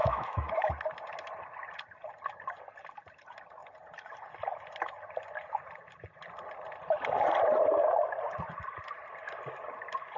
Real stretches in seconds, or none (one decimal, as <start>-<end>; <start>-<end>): 0.7-10.2